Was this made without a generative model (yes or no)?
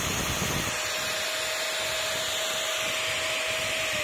yes